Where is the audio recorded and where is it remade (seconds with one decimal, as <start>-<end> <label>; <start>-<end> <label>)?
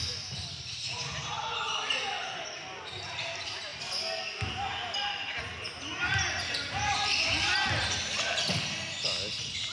0.0-6.1 recorded; 6.1-6.9 remade; 6.9-9.7 recorded